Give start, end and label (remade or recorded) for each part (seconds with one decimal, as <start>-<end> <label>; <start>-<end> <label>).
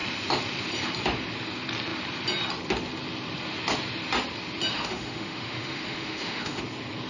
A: 0.0-4.7 recorded; 4.7-6.6 remade; 6.6-7.1 recorded